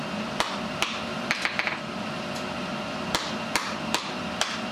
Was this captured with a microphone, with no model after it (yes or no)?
no